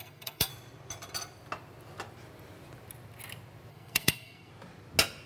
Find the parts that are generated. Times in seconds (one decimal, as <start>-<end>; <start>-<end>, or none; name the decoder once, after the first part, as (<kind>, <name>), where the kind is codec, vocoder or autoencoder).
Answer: 0.0-0.5 (codec, SNAC); 3.7-4.5